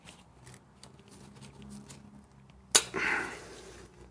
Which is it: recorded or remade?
recorded